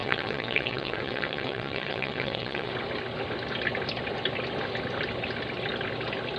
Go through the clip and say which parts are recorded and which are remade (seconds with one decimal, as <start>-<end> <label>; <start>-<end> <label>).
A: 0.0-2.7 remade; 2.7-6.4 recorded